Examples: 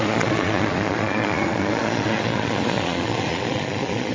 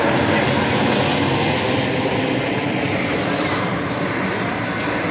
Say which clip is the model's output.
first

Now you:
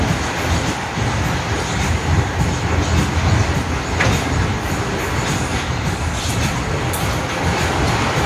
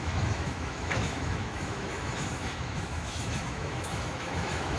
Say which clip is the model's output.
second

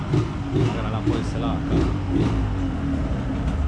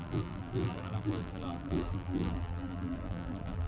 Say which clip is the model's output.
second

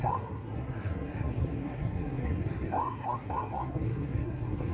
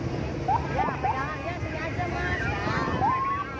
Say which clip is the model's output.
first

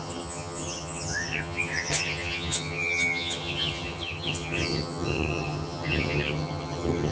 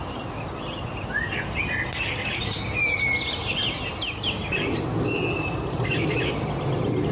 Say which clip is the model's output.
first